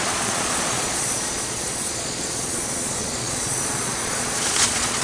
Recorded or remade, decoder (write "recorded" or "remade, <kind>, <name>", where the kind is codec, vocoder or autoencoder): remade, vocoder, Vocos